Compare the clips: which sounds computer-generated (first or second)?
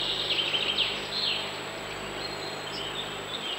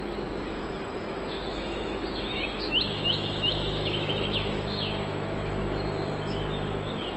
second